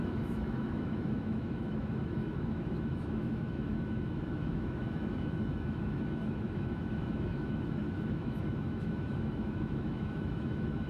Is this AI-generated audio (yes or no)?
yes